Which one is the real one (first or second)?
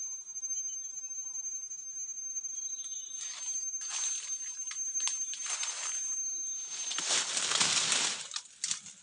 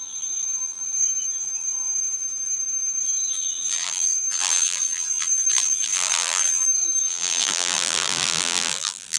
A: first